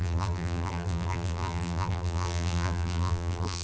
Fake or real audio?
fake